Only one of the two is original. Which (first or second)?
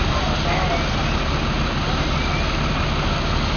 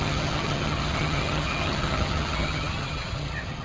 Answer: first